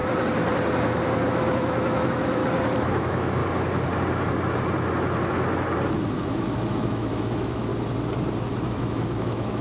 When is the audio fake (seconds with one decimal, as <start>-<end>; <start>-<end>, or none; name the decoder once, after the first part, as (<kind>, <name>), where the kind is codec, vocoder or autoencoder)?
1.3-2.4 (autoencoder, DAC-VAE); 2.9-3.4; 6.1-7.7; 8.7-9.6